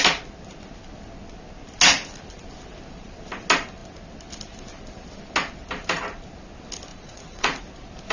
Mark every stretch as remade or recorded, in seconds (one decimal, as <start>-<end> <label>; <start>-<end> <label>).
0.0-6.9 recorded; 6.9-7.6 remade; 7.6-8.1 recorded